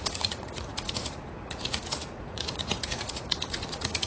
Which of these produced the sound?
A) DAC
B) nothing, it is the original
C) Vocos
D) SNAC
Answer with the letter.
C